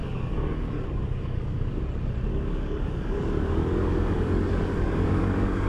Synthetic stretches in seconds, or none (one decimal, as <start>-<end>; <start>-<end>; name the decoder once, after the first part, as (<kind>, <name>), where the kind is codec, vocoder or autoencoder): 0.0-1.8 (codec, DAC); 2.3-5.7